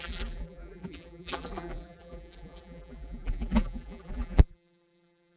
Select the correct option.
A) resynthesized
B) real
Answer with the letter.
A